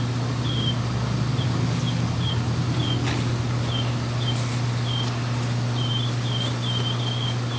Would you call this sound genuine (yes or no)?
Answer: yes